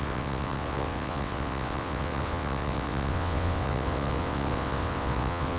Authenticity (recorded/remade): remade